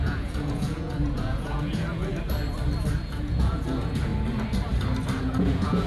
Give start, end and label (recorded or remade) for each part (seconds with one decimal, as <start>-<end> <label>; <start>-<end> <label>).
0.0-2.0 remade; 2.0-3.0 recorded; 3.0-4.1 remade; 4.1-5.2 recorded; 5.2-5.9 remade